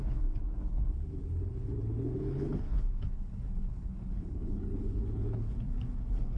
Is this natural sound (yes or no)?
no